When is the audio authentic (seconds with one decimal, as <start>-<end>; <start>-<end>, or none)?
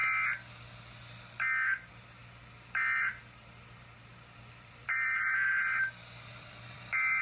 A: 0.0-4.1; 5.2-6.3